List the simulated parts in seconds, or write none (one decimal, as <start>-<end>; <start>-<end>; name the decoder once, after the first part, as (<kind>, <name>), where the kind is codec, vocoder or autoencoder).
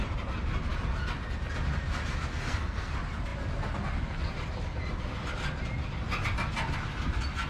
2.3-2.9 (codec, SNAC)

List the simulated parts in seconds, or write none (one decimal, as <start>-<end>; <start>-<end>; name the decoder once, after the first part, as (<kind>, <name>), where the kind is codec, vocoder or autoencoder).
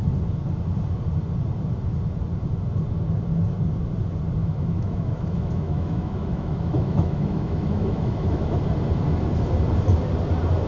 4.4-8.6 (autoencoder, DAC-VAE)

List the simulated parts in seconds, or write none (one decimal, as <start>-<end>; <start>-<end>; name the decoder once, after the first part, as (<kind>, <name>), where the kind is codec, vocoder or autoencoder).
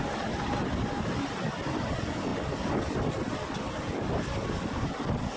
none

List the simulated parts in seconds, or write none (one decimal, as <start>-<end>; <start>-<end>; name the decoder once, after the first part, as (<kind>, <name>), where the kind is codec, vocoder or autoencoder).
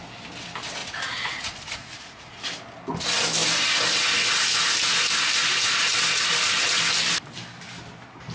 0.8-2.4 (vocoder, Vocos)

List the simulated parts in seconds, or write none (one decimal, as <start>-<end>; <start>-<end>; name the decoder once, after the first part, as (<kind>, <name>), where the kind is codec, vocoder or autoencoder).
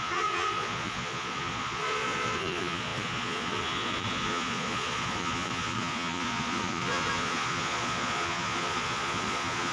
0.0-9.7 (vocoder, Vocos)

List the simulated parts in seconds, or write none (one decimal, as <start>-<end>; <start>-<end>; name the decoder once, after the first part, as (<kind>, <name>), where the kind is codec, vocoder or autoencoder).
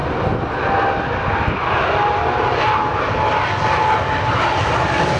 none